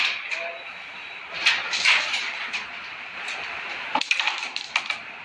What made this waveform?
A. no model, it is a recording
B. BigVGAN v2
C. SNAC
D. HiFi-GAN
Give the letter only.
B